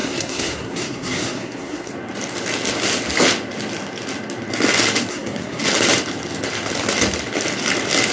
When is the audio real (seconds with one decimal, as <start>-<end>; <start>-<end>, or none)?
1.9-5.1; 5.6-8.1